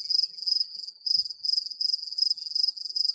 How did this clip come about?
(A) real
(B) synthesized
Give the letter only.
B